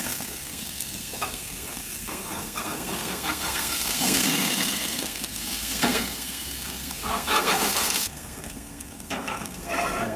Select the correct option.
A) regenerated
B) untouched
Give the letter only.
A